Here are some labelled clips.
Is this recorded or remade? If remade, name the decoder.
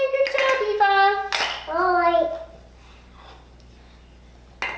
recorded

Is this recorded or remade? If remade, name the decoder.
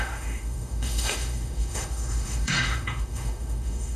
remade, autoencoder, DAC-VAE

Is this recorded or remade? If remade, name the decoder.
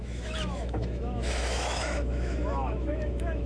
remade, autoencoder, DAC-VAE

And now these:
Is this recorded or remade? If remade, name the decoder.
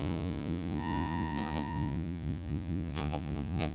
remade, vocoder, Vocos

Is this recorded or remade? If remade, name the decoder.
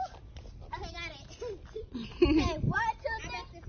recorded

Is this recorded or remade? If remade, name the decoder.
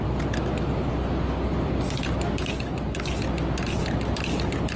recorded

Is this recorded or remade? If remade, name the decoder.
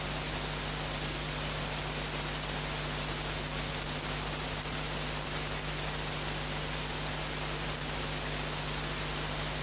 recorded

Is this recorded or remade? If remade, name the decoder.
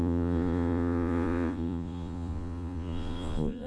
remade, vocoder, Vocos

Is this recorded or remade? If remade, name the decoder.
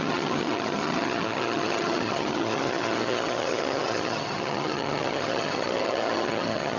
remade, vocoder, HiFi-GAN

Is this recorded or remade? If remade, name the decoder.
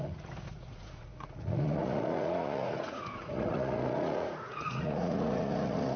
remade, vocoder, Vocos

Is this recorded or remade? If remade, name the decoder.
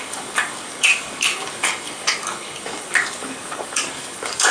remade, codec, DAC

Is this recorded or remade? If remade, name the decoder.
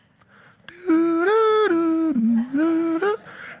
recorded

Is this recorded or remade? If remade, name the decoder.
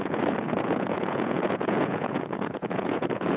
remade, vocoder, Vocos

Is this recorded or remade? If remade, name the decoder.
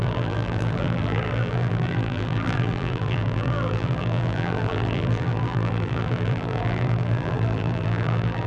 remade, vocoder, BigVGAN v2